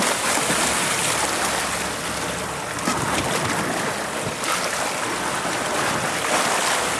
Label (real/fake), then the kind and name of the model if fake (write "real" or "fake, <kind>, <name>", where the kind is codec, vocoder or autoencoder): real